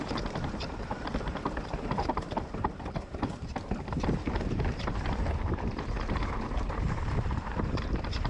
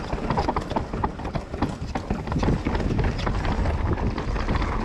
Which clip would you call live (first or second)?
second